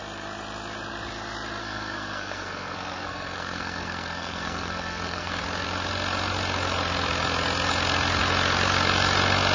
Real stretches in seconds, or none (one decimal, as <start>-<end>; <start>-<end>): 0.0-1.6; 5.4-9.5

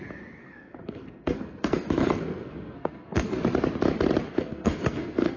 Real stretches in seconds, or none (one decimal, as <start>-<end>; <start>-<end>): 0.0-0.4; 3.4-4.3

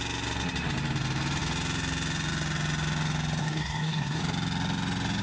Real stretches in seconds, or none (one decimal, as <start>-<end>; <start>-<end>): 0.0-3.4; 4.2-5.2

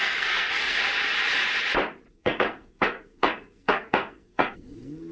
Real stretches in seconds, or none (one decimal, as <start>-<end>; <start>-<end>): 0.8-2.1

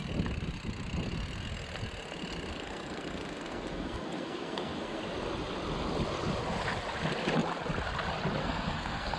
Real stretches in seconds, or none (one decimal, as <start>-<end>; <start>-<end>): 0.0-2.5; 5.0-8.4

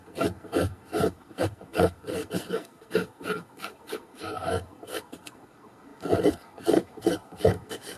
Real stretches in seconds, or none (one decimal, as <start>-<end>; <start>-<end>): none

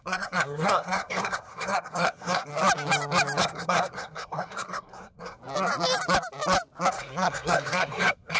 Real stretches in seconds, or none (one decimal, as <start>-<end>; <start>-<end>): 2.5-3.4; 5.4-6.9

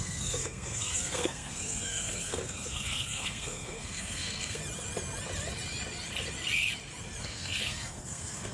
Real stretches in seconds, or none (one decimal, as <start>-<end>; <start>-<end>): 4.6-7.2